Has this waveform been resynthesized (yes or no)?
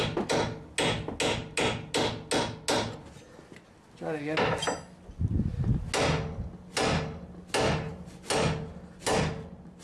no